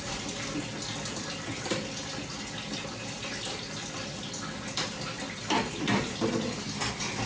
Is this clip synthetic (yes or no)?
no